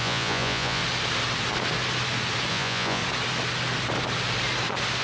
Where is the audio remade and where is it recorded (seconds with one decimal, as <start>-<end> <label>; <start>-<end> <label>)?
0.0-0.8 remade; 0.8-2.5 recorded; 2.5-3.0 remade; 3.0-5.0 recorded